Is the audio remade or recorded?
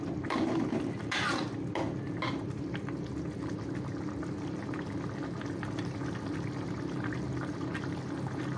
recorded